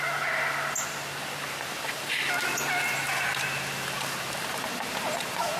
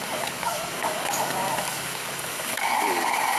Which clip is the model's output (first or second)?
second